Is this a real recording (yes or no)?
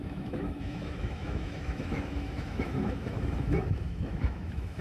no